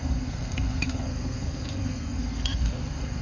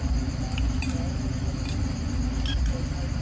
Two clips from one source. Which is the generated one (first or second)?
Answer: first